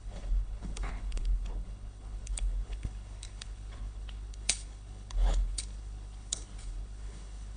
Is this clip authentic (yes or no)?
no